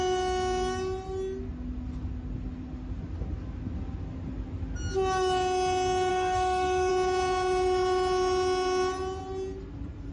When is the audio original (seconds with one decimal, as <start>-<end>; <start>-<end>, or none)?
0.0-6.1; 6.9-10.1